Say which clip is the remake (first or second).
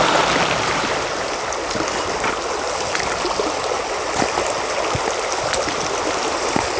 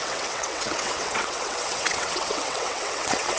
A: second